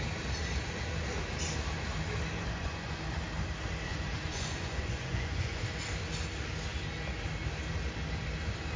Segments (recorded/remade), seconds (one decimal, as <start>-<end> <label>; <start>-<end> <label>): 0.0-2.4 recorded; 2.4-3.0 remade; 3.0-3.9 recorded; 3.9-5.6 remade; 5.6-8.8 recorded